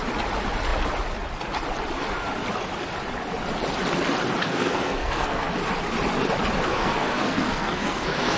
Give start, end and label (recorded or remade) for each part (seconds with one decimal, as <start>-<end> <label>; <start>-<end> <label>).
0.0-4.4 recorded; 4.4-5.5 remade; 5.5-6.7 recorded; 6.7-8.4 remade